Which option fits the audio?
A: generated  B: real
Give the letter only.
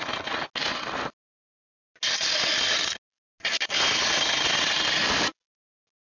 B